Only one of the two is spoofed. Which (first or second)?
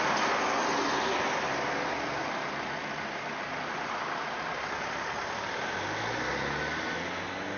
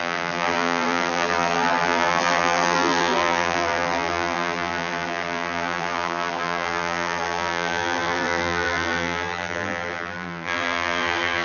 second